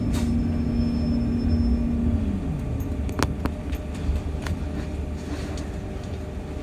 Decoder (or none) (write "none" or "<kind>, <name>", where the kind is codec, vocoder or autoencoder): none